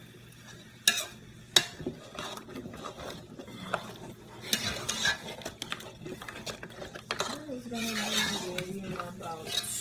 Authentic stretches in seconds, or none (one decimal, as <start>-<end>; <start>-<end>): 0.0-9.8